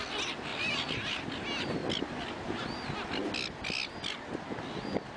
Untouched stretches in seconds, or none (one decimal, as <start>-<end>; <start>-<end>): 0.0-0.5; 1.2-5.2